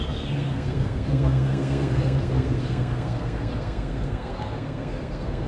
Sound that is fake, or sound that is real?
fake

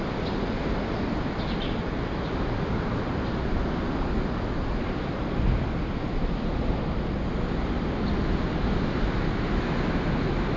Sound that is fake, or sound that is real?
real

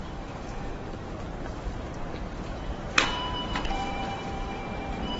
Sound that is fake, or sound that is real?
fake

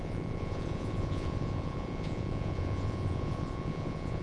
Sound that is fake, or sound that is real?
fake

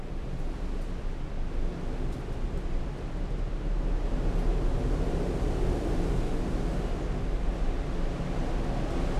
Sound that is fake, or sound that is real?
real